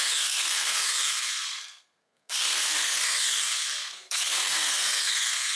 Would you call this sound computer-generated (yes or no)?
yes